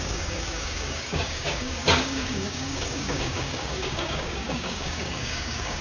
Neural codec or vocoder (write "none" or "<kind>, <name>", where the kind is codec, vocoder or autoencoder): codec, DAC